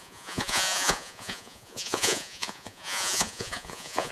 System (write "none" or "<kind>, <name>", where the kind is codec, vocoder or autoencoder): vocoder, Vocos